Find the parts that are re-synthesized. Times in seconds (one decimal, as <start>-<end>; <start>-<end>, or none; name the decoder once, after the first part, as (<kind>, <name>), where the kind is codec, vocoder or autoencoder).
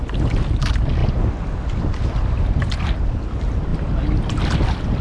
none